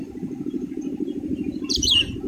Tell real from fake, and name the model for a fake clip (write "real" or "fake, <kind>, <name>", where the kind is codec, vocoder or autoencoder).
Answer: fake, vocoder, BigVGAN v2